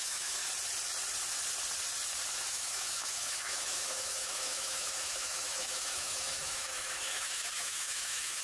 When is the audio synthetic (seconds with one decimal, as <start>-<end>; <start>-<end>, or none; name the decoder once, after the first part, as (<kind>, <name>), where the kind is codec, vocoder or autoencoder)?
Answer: 0.0-0.4 (autoencoder, DAC-VAE); 2.5-8.4